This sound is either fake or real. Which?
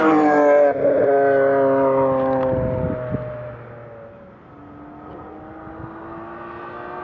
real